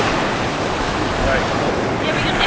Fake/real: real